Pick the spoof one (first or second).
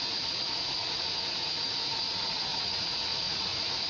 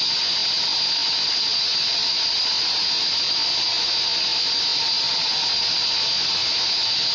first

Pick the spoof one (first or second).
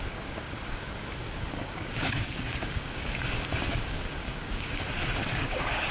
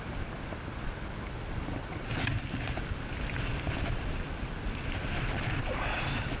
first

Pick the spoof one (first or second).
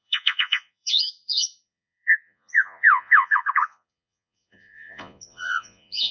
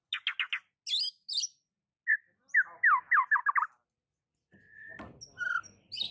first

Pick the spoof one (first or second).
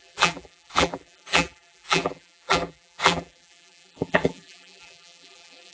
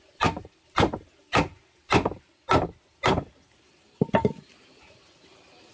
first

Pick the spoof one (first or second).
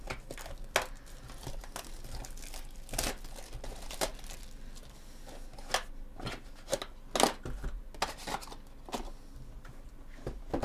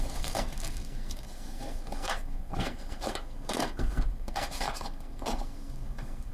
second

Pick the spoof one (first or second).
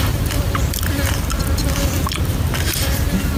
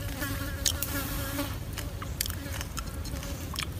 second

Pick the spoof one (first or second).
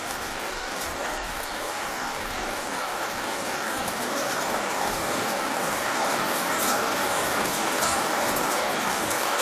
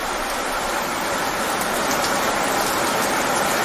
first